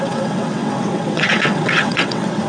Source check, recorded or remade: remade